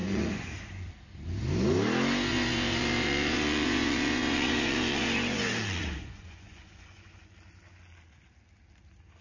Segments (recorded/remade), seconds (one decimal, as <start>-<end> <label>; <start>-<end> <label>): 0.0-0.9 remade; 0.9-2.3 recorded; 2.3-7.3 remade; 7.3-9.2 recorded